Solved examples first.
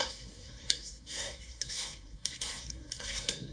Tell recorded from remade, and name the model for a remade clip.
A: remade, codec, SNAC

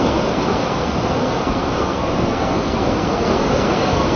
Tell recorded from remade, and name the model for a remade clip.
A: remade, codec, SNAC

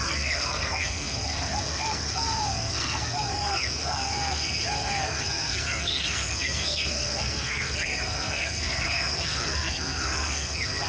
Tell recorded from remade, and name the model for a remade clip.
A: remade, codec, SNAC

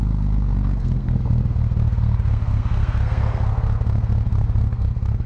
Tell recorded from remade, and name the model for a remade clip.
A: remade, codec, SNAC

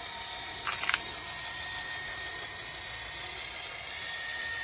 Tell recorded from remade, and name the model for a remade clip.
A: recorded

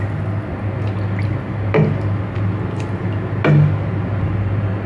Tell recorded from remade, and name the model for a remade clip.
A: recorded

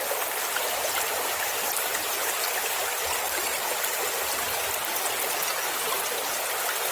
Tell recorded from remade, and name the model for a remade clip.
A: recorded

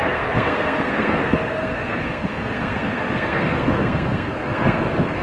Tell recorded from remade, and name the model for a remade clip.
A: remade, codec, SNAC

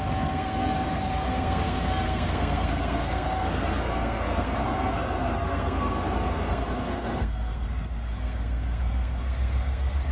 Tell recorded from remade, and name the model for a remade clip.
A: remade, codec, SNAC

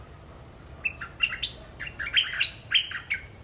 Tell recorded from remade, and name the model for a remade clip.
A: recorded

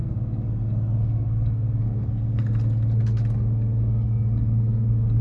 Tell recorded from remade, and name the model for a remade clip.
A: remade, codec, SNAC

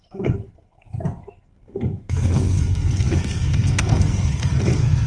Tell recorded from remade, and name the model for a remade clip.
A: remade, codec, SNAC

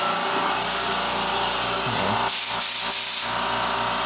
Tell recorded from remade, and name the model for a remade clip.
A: recorded